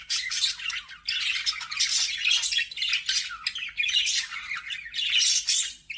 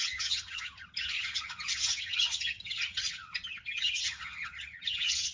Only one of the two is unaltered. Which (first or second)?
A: first